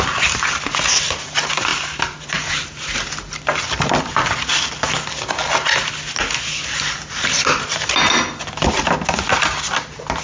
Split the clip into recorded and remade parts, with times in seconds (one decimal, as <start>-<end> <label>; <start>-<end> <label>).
0.0-10.2 recorded